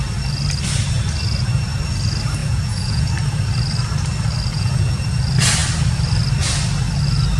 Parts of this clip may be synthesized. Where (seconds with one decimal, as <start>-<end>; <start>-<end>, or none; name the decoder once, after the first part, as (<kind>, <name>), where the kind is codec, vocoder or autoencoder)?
2.4-3.1 (vocoder, Vocos); 4.5-5.1